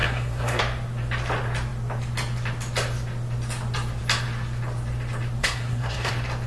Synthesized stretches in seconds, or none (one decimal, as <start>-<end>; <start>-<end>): 0.0-0.6; 5.4-6.1